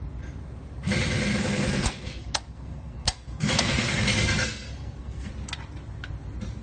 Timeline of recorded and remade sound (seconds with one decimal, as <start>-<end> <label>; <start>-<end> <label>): 0.0-1.3 recorded; 1.3-5.3 remade; 5.3-6.6 recorded